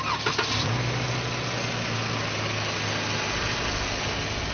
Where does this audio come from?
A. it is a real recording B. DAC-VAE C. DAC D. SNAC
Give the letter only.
A